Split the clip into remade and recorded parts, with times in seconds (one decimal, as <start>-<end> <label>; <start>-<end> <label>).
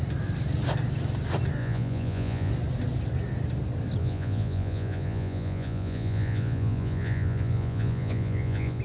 0.0-1.6 recorded; 1.6-2.5 remade; 2.5-4.0 recorded; 4.0-8.8 remade